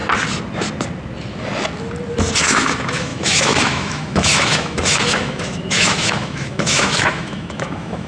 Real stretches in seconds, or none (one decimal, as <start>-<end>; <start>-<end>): 0.0-2.4